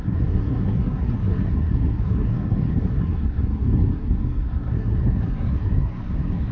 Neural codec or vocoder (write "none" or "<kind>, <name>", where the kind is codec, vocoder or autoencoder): codec, SNAC